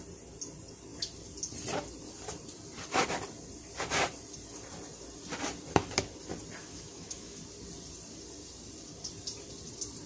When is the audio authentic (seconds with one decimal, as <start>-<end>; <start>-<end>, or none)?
0.0-6.6; 7.4-10.1